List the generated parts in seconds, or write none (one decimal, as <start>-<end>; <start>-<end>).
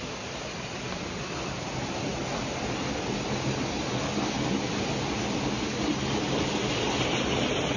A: none